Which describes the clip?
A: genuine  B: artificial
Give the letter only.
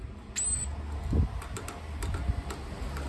A